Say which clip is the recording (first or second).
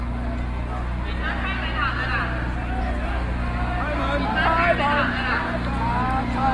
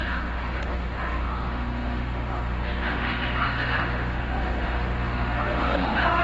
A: first